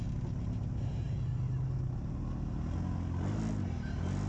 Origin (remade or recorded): recorded